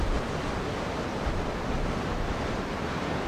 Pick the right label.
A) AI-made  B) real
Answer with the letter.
B